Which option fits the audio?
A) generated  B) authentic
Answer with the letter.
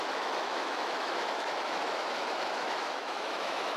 A